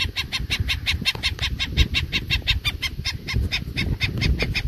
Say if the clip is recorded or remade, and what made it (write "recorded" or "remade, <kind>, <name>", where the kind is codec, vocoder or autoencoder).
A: remade, vocoder, BigVGAN v2